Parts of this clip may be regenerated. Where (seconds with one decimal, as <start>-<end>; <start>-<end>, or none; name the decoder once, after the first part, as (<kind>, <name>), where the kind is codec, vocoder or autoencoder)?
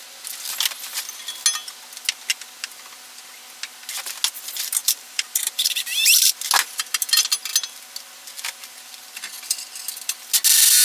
4.8-6.3 (vocoder, BigVGAN v2)